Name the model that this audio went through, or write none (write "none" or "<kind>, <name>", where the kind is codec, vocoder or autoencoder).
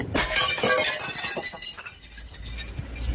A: none